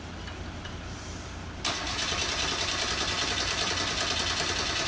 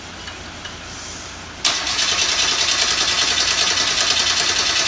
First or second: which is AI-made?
first